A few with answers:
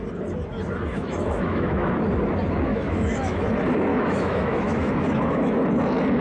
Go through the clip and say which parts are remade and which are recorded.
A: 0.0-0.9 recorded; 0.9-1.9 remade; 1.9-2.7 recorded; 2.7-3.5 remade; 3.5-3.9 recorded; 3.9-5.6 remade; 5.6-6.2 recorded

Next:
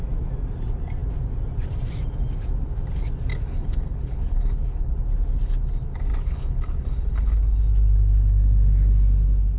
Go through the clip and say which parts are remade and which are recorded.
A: 0.0-3.3 recorded; 3.3-4.9 remade; 4.9-6.1 recorded; 6.1-7.4 remade; 7.4-9.6 recorded